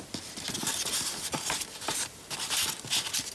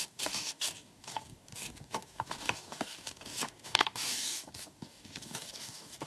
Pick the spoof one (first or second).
second